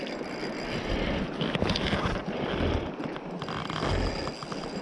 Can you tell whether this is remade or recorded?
recorded